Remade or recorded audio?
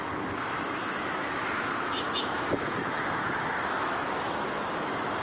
remade